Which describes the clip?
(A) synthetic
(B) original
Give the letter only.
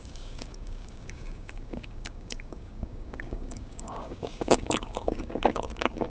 A